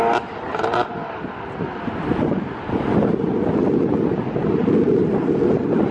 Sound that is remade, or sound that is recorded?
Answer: recorded